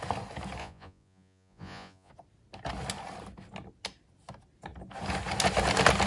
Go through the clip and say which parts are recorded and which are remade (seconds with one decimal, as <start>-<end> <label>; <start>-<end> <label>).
0.0-0.6 recorded; 0.6-2.1 remade; 2.1-6.1 recorded